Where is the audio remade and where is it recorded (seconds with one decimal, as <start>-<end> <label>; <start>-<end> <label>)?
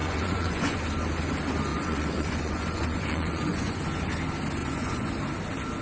0.0-0.8 remade; 0.8-1.7 recorded; 1.7-3.8 remade; 3.8-4.6 recorded; 4.6-5.1 remade; 5.1-5.8 recorded